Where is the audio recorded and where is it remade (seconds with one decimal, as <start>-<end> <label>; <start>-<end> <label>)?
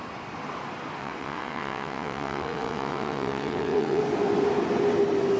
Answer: 0.0-1.0 recorded; 1.0-4.0 remade; 4.0-5.4 recorded